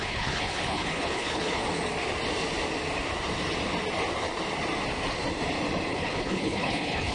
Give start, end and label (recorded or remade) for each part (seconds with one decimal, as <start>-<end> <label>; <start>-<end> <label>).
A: 0.0-1.6 remade; 1.6-5.9 recorded; 5.9-7.1 remade

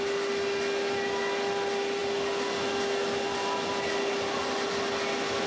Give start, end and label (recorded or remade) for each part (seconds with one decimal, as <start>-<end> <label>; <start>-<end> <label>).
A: 0.0-5.5 recorded